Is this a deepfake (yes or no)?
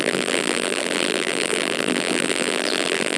yes